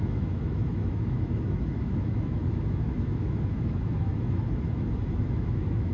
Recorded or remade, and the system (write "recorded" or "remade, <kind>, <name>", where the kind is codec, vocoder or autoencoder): remade, autoencoder, DAC-VAE